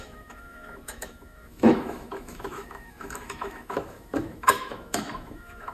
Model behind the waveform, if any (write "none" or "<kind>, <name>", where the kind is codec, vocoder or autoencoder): autoencoder, DAC-VAE